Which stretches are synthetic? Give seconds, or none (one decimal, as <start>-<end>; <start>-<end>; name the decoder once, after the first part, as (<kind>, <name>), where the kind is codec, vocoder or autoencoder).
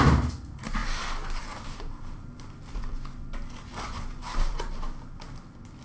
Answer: none